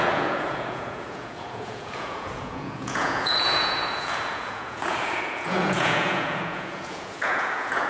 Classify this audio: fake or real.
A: fake